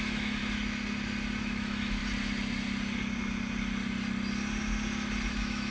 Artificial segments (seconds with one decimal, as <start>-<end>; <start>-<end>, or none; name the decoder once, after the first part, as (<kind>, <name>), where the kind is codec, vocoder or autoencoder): 0.0-0.4 (autoencoder, DAC-VAE); 1.4-2.0; 5.3-5.7

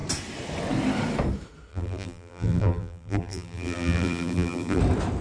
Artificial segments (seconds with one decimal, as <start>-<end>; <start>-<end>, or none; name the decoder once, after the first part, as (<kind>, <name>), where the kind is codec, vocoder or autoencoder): 1.7-4.8 (vocoder, BigVGAN v2)

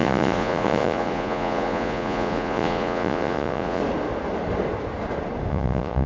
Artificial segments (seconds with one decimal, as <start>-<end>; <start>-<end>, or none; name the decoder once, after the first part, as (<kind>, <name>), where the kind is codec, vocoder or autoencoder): 0.0-3.8 (vocoder, Vocos); 5.5-6.1

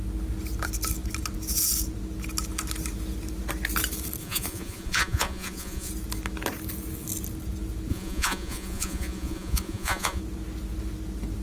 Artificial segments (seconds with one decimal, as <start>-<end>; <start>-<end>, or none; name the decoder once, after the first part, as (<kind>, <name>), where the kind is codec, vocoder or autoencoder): 4.2-5.9 (vocoder, Vocos); 7.9-10.2

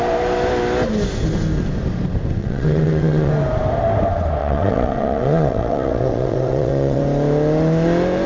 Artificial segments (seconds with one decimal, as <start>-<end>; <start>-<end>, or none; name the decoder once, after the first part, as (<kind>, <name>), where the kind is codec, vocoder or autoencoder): 2.4-3.3 (vocoder, WaveNeXt); 4.4-7.0

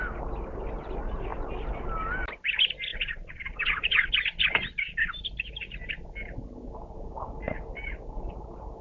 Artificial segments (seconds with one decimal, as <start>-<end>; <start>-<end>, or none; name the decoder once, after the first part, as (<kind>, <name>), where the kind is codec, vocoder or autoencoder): 2.9-4.1 (vocoder, Vocos)

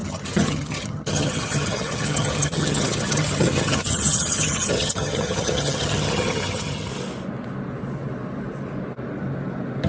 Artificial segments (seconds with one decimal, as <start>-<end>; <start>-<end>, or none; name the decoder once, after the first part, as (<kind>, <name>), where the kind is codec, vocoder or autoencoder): 0.0-6.9 (vocoder, HiFi-GAN)

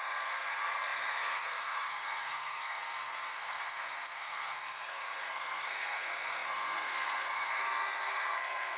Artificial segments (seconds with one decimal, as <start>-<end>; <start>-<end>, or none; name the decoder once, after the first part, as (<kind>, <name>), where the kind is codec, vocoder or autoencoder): 0.0-8.8 (codec, SNAC)